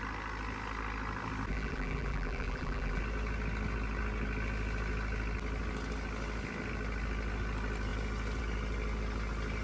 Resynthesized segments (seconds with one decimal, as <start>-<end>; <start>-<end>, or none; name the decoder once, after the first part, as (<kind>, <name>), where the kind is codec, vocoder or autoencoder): 1.5-3.0 (vocoder, BigVGAN v2)